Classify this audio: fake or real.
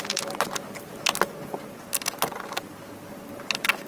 real